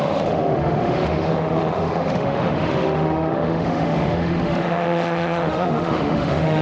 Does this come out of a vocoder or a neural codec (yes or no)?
yes